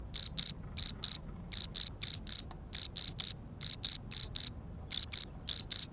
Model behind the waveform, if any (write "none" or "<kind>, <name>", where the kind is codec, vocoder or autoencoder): none